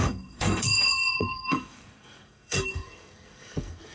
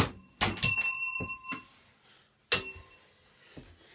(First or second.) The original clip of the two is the second